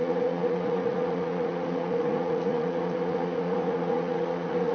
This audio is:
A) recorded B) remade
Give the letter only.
B